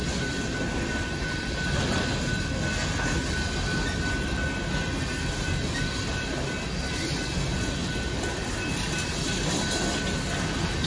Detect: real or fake real